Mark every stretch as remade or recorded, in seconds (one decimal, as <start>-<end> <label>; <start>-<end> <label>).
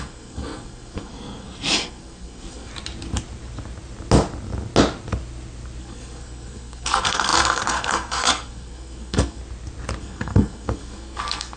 0.0-2.7 remade; 2.7-5.8 recorded; 5.8-9.4 remade; 9.4-10.0 recorded; 10.0-11.6 remade